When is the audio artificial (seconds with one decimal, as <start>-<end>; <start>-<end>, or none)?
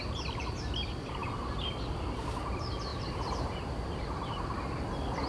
none